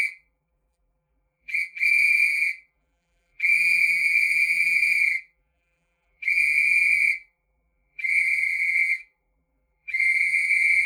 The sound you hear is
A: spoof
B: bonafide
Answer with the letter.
A